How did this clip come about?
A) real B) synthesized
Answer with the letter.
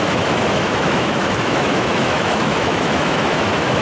B